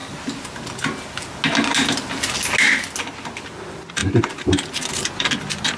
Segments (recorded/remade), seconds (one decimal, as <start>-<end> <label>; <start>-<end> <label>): 0.0-5.8 recorded